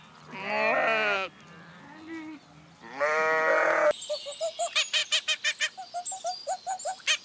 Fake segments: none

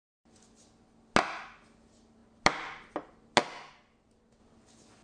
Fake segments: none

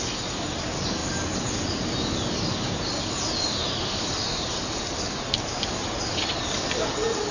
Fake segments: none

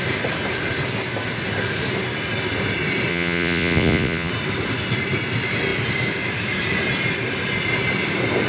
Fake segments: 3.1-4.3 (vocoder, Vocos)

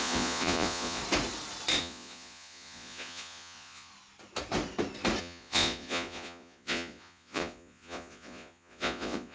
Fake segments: 0.0-1.0 (vocoder, Vocos); 1.8-3.9; 5.2-9.3